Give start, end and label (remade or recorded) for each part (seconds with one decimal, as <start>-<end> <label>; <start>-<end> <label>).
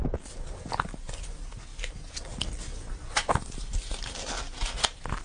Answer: 0.0-5.2 recorded